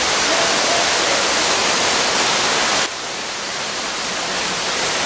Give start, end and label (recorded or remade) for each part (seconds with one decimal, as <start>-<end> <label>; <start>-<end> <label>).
0.0-1.6 recorded; 1.6-2.3 remade; 2.3-2.9 recorded; 2.9-3.8 remade; 3.8-5.1 recorded